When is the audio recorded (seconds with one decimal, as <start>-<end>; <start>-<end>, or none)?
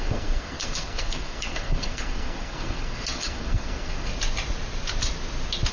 4.1-5.7